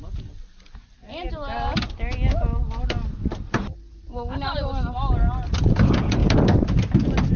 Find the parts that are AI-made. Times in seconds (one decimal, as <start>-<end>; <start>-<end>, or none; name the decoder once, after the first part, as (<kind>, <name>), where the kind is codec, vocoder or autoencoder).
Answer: none